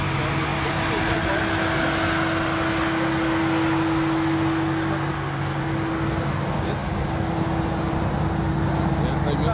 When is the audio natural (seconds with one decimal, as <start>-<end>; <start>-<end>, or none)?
0.0-9.5